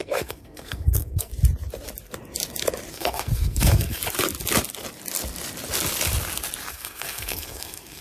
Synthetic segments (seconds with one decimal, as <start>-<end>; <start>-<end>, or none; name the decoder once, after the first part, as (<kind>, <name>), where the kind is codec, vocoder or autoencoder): 0.0-1.3 (codec, SNAC); 2.9-4.0; 6.7-8.0